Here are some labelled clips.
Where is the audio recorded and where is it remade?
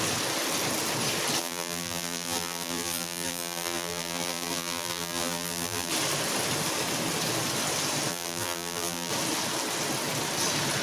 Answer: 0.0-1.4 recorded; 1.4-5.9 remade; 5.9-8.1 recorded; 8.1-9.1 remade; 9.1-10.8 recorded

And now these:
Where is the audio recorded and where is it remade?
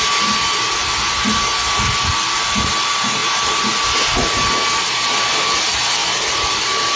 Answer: 0.0-3.2 recorded; 3.2-3.7 remade; 3.7-6.0 recorded; 6.0-7.0 remade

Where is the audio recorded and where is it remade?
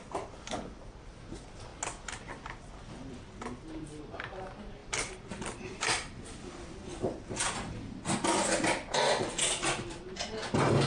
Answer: 0.0-4.8 recorded; 4.8-6.5 remade; 6.5-6.9 recorded; 6.9-8.1 remade; 8.1-10.9 recorded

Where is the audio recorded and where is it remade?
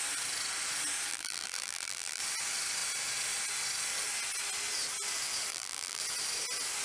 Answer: 0.0-1.1 recorded; 1.1-2.2 remade; 2.2-5.5 recorded; 5.5-6.0 remade; 6.0-6.8 recorded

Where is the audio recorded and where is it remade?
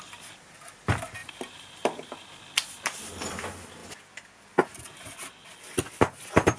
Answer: 0.0-1.2 recorded; 1.2-2.3 remade; 2.3-6.6 recorded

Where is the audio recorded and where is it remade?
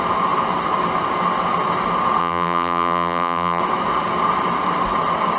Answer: 0.0-2.2 recorded; 2.2-3.6 remade; 3.6-5.4 recorded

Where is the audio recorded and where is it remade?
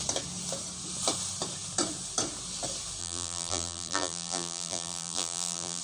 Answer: 0.0-3.0 recorded; 3.0-5.8 remade